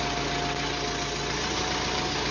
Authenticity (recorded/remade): recorded